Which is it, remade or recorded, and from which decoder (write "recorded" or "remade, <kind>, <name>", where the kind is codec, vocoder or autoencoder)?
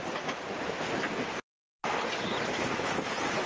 recorded